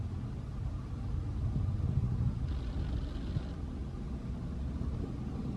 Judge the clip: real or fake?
real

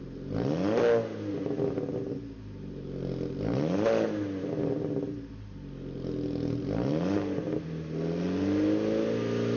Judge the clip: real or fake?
real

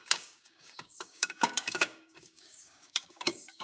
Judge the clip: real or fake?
fake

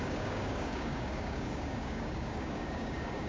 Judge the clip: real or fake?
fake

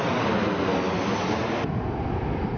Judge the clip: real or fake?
real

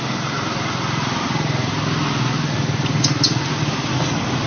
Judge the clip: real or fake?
real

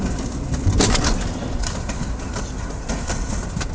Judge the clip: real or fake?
real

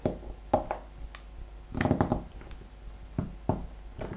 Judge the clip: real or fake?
real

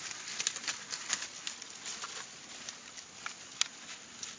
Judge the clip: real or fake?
real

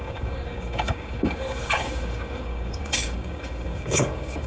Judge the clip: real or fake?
fake